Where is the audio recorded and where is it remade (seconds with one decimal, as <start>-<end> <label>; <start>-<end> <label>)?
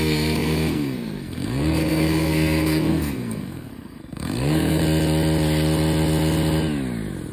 0.0-4.8 remade; 4.8-7.3 recorded